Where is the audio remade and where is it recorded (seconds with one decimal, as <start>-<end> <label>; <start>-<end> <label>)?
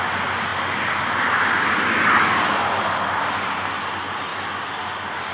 0.0-5.3 recorded